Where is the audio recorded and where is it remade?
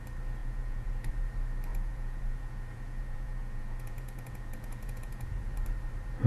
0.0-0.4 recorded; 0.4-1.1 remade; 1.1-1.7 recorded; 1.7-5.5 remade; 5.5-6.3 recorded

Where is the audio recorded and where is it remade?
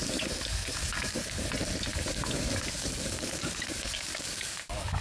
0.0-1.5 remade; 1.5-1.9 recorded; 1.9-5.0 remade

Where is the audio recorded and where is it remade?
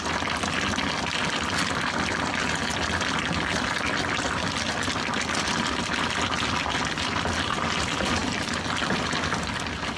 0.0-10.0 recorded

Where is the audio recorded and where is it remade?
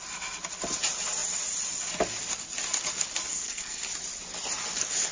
0.0-3.3 recorded; 3.3-3.8 remade; 3.8-5.1 recorded